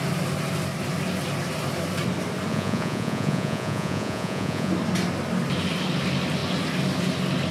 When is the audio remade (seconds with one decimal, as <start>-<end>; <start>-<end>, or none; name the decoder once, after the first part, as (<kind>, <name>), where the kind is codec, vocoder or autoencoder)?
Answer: 2.5-4.7 (vocoder, Vocos)